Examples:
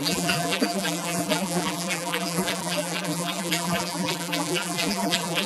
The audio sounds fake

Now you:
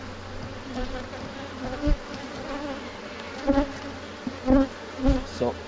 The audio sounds real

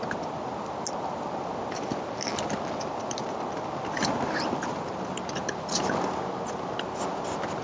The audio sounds real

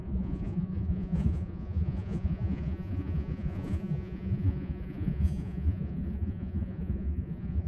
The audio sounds fake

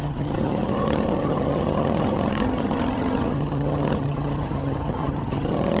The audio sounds fake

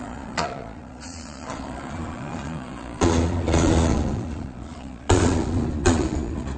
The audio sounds fake